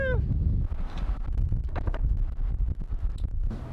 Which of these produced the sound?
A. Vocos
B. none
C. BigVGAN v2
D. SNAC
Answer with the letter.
B